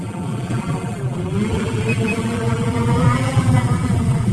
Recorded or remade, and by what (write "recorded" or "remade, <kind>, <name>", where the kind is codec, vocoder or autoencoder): remade, vocoder, BigVGAN v2